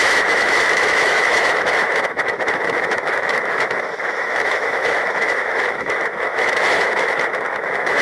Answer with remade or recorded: remade